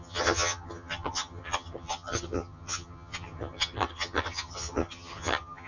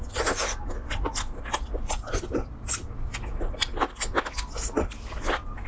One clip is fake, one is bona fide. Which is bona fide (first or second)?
second